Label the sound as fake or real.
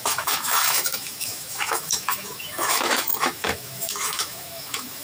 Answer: fake